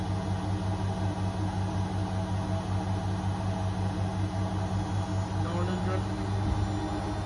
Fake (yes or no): no